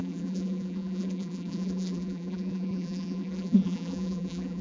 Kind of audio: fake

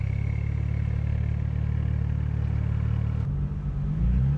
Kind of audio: real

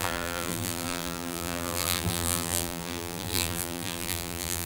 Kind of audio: fake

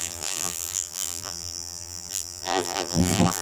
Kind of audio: fake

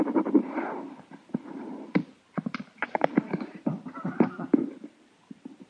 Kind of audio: fake